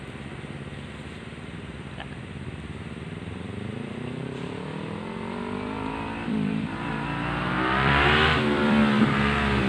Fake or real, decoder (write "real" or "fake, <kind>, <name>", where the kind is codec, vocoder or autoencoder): fake, vocoder, BigVGAN v2